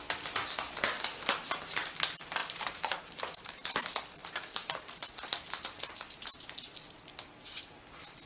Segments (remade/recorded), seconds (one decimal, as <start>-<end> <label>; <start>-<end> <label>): 0.0-2.4 recorded; 2.4-3.7 remade; 3.7-4.2 recorded; 4.2-5.0 remade; 5.0-8.3 recorded